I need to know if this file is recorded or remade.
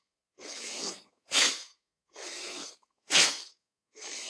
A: remade